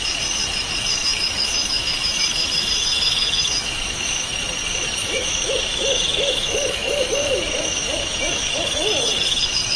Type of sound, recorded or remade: remade